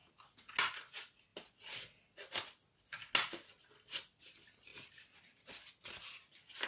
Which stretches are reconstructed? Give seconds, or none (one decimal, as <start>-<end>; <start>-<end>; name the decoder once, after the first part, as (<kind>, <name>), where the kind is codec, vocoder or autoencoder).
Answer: none